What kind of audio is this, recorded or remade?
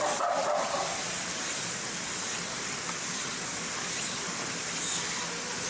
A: recorded